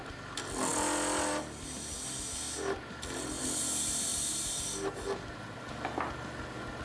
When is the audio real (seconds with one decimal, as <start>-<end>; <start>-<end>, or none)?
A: 0.0-6.8